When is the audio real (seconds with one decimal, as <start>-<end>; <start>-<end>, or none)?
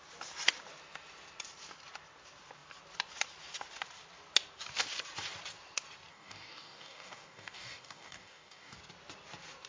0.0-6.1; 8.8-9.7